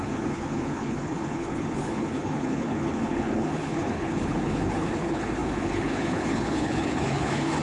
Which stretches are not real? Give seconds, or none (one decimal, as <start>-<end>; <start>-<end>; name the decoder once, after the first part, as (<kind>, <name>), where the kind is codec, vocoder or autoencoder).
0.0-7.6 (codec, HILCodec)